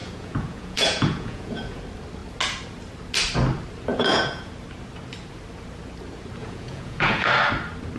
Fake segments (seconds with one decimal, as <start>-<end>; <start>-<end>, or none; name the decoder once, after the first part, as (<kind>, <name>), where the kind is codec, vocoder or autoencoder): 0.0-1.8 (vocoder, Vocos); 3.9-4.5; 6.4-7.3